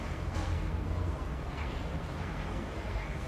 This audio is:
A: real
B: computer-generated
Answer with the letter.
B